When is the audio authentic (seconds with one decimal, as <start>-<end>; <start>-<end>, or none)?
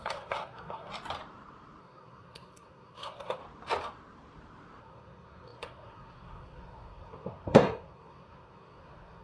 0.9-1.8; 3.4-4.8